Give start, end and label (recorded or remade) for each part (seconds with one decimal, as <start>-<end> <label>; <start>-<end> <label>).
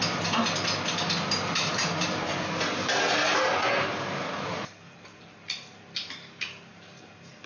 0.0-7.5 recorded